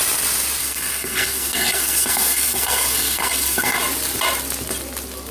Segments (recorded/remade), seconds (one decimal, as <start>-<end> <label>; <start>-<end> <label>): 0.0-0.6 recorded; 0.6-3.8 remade; 3.8-5.3 recorded